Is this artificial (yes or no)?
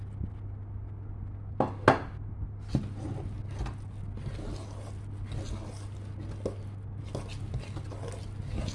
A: no